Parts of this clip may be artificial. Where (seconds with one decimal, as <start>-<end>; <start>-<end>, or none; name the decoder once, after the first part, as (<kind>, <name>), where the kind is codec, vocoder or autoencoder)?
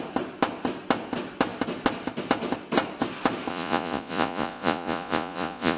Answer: 3.5-5.8 (vocoder, Vocos)